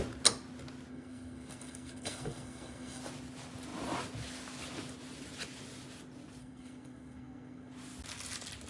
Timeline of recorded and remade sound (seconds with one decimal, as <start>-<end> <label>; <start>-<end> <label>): 0.0-0.9 recorded; 0.9-3.0 remade; 3.0-6.4 recorded; 6.4-7.7 remade; 7.7-8.7 recorded